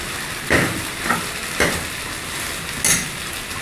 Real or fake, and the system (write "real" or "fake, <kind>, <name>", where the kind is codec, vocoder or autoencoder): real